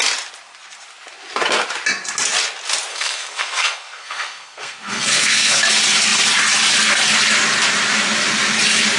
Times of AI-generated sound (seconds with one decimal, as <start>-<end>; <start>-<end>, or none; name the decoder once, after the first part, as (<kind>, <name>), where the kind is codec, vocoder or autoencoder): 2.9-5.6 (codec, SNAC)